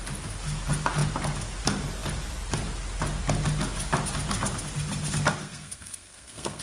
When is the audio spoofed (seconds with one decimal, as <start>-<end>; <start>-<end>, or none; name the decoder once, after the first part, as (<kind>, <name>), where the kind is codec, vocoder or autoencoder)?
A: 5.4-6.6 (codec, SNAC)